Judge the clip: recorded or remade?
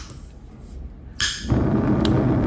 recorded